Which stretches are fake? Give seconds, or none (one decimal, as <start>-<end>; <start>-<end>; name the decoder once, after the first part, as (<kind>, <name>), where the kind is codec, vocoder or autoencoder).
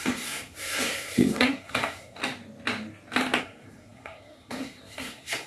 0.0-2.2 (codec, SNAC); 3.4-5.5